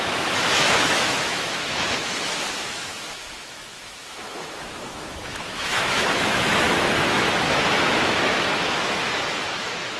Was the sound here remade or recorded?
remade